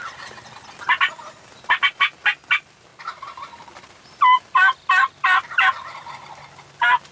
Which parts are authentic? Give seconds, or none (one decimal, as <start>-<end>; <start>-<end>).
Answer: 0.0-2.9; 4.1-7.1